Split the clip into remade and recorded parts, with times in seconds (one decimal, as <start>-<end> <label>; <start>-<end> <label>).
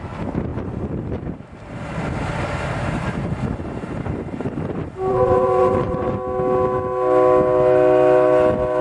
0.0-5.1 recorded; 5.1-6.1 remade; 6.1-8.8 recorded